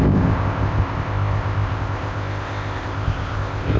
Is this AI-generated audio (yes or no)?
yes